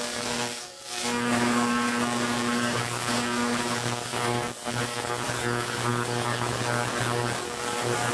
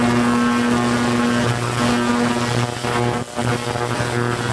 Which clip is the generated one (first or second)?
first